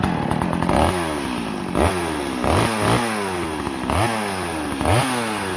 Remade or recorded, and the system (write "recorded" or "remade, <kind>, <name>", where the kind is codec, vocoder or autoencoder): recorded